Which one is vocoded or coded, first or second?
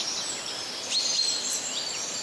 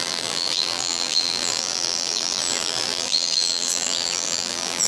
second